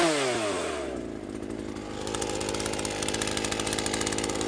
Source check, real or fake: real